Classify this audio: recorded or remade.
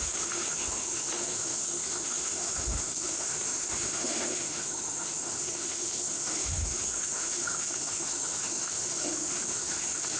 remade